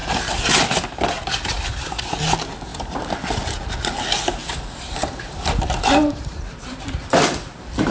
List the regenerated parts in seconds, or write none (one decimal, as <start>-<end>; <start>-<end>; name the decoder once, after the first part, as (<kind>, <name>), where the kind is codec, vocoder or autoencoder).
4.4-7.1 (vocoder, BigVGAN v2)